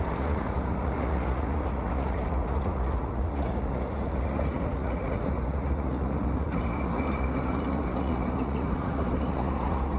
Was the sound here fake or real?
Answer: fake